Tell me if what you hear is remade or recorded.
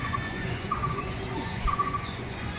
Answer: remade